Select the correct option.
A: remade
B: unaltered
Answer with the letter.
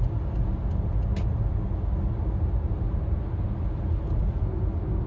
B